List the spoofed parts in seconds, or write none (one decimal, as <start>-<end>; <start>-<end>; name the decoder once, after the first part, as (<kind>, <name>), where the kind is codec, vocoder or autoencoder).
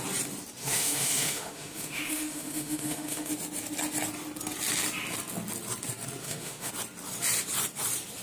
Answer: 0.6-3.3 (autoencoder, DAC-VAE); 6.2-6.7